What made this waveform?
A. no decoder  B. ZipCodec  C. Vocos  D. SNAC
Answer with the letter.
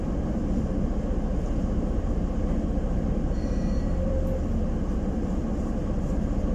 A